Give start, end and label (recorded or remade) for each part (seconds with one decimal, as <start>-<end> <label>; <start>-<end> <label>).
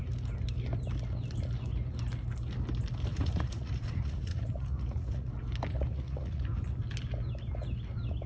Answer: 0.0-3.1 recorded; 3.1-5.3 remade; 5.3-5.7 recorded; 5.7-6.4 remade; 6.4-8.3 recorded